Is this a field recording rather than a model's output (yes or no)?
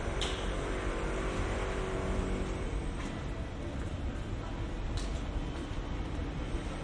yes